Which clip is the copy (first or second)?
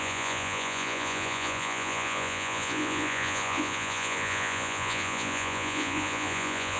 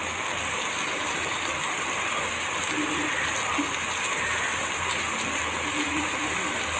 first